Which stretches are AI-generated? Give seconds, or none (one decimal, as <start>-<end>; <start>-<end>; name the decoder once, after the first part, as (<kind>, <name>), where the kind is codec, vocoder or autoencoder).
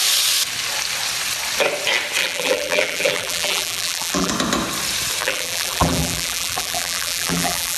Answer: 2.2-4.3 (vocoder, BigVGAN v2); 5.2-7.8